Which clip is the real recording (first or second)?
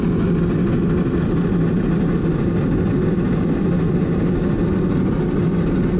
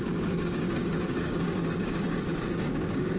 first